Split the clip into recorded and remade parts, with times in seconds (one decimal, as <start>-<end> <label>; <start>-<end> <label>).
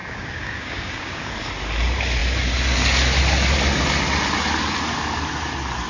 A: 0.0-1.3 remade; 1.3-5.9 recorded